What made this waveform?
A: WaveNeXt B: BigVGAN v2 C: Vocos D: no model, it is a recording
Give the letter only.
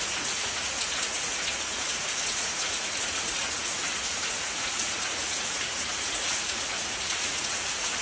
C